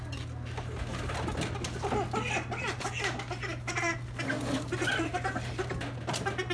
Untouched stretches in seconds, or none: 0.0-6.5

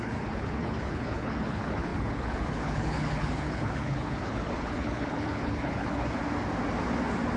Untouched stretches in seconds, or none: 6.2-7.4

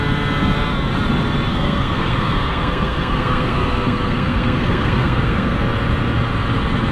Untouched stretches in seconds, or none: 0.0-1.5; 5.6-6.9

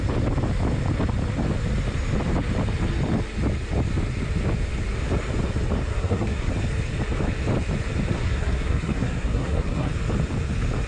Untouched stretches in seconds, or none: 0.0-5.9; 6.5-8.1; 9.9-10.9

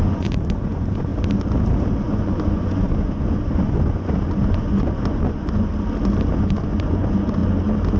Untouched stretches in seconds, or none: 1.1-2.0; 5.7-6.4; 7.4-8.0

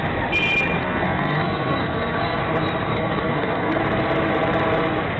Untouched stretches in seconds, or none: 0.0-0.8; 2.4-2.9; 3.8-5.2

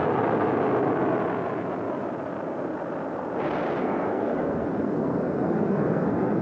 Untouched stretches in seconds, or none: 0.0-3.8

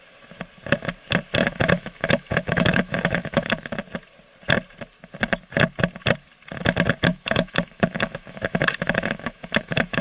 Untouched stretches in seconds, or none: 0.0-1.4; 3.7-7.1